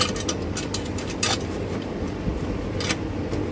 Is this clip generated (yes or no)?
no